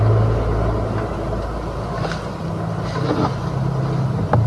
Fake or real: real